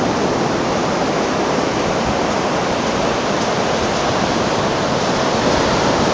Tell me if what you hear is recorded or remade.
recorded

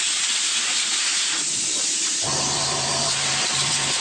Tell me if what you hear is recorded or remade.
recorded